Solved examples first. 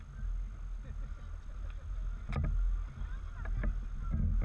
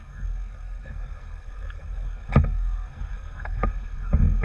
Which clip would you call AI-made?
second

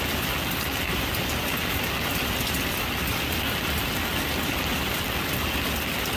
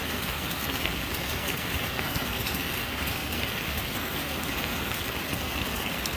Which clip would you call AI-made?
second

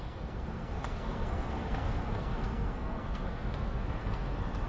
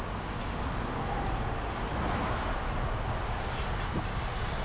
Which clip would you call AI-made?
first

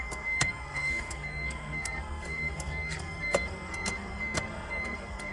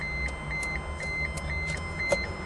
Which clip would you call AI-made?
first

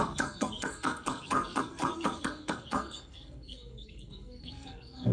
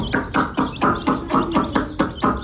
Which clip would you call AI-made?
first